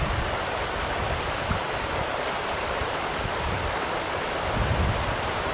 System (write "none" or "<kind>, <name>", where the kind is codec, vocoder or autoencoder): none